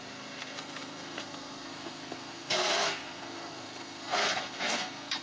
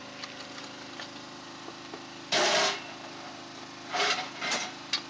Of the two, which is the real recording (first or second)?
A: second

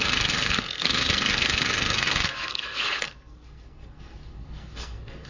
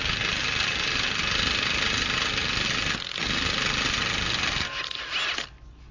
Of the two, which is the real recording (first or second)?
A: second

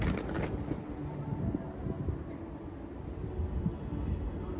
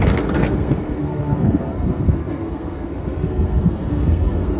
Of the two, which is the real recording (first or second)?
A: first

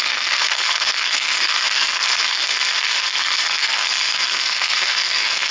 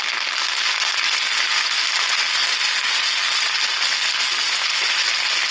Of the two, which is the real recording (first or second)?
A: second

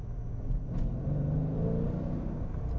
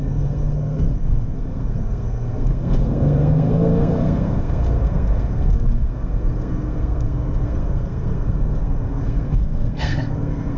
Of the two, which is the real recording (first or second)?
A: first